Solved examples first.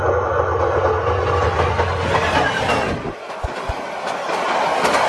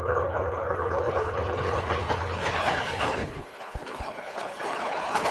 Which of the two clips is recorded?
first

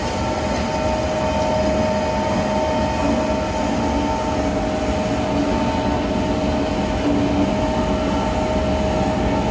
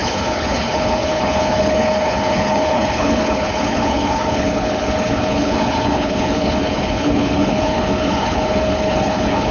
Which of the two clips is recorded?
first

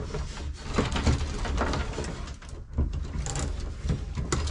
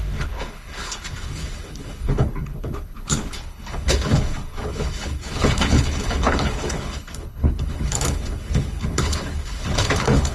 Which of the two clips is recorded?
first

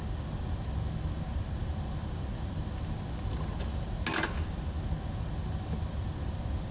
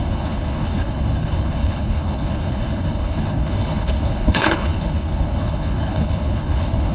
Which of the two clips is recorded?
first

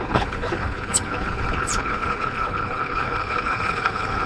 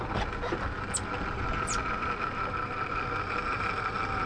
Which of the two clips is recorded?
second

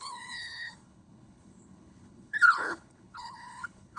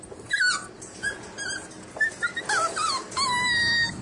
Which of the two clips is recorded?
second